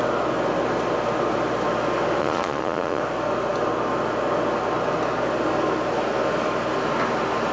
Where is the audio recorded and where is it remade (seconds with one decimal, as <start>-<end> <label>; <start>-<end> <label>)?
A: 0.0-2.2 recorded; 2.2-3.0 remade; 3.0-7.5 recorded